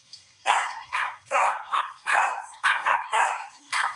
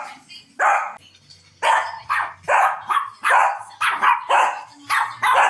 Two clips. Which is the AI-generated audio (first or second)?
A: first